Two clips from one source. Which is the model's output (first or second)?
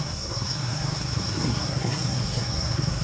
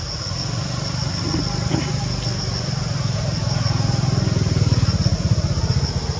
first